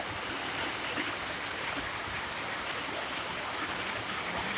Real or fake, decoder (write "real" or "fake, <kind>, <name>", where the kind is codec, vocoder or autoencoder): real